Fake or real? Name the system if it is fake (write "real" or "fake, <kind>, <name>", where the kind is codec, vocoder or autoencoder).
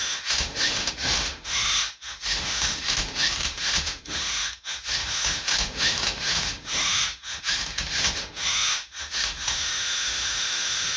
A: fake, autoencoder, DAC-VAE